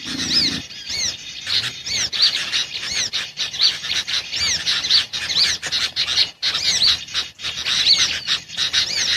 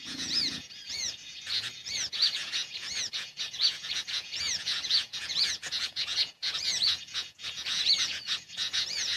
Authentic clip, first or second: first